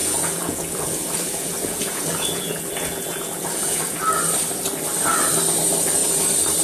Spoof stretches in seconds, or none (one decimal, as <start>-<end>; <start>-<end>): 0.0-4.0